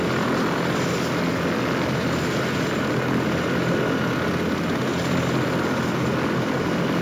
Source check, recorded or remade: recorded